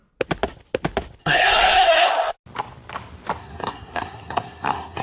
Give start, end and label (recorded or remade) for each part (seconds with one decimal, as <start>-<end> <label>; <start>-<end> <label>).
0.0-1.2 recorded; 1.2-2.1 remade; 2.1-3.4 recorded; 3.4-5.0 remade